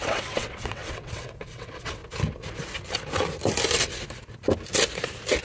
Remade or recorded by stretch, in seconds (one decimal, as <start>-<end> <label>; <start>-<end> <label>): 0.0-2.0 remade; 2.0-5.4 recorded